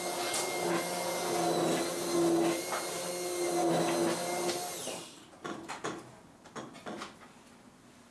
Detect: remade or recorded recorded